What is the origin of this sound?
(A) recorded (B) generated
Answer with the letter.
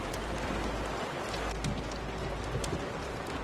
A